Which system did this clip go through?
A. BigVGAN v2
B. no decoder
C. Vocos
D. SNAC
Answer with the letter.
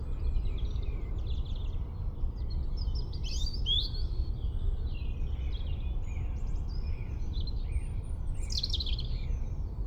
A